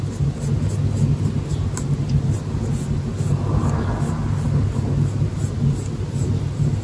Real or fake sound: real